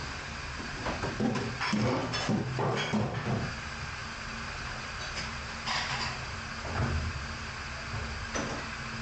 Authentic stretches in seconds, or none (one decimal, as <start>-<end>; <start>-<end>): 1.4-4.0; 5.4-9.0